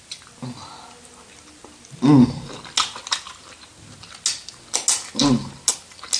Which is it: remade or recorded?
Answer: recorded